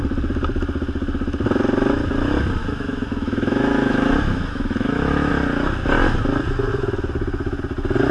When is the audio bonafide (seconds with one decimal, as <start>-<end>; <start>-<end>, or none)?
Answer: 0.0-2.6; 5.3-8.1